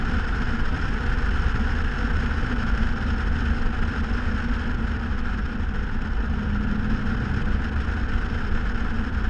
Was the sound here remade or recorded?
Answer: recorded